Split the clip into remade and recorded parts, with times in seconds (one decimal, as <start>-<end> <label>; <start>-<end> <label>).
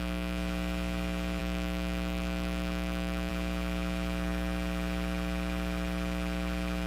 0.0-1.4 recorded; 1.4-3.3 remade; 3.3-6.9 recorded